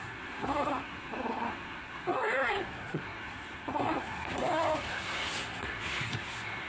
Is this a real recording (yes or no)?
no